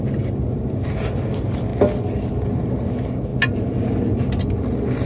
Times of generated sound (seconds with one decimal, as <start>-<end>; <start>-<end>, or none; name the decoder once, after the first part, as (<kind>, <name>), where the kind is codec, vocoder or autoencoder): none